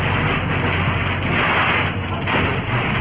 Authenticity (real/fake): real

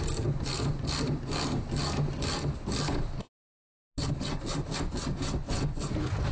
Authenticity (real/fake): real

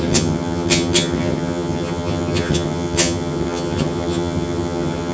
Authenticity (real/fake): fake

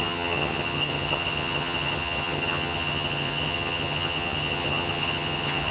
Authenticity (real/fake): fake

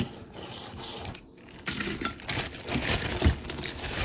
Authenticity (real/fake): real